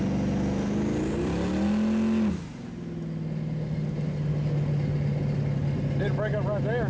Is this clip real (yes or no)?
yes